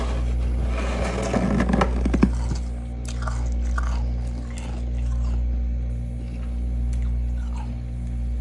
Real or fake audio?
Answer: real